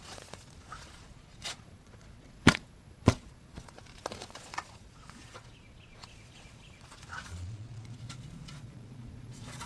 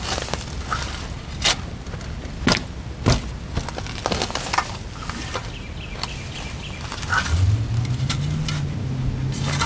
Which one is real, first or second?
second